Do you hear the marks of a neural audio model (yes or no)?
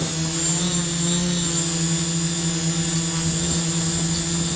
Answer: no